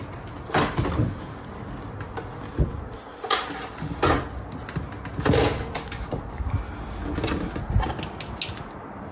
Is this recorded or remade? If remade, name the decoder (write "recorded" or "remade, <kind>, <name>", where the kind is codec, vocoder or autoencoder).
recorded